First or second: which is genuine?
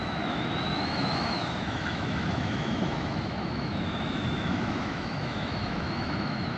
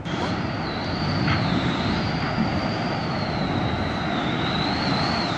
second